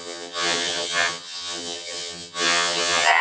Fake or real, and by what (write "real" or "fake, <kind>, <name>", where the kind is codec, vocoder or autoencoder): fake, vocoder, HiFi-GAN